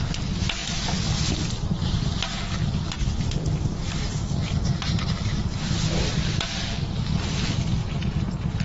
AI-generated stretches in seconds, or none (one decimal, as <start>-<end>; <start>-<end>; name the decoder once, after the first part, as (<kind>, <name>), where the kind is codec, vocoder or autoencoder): 7.8-8.6 (vocoder, Vocos)